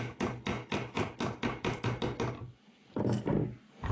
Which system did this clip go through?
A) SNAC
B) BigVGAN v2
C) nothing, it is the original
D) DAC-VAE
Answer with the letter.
C